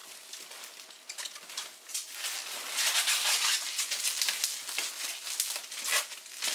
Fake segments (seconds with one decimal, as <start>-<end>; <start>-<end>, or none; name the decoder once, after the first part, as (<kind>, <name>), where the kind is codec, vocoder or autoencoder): none